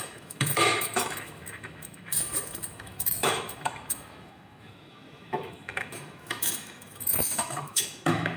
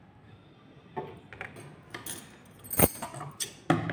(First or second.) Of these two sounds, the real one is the second